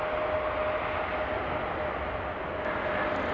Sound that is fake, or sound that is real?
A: real